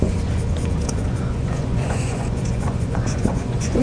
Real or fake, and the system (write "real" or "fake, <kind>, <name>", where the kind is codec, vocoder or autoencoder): fake, vocoder, Vocos